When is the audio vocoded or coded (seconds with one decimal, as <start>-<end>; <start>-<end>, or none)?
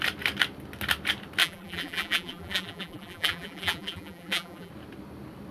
1.4-4.7